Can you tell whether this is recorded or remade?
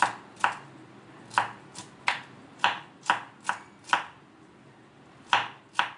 remade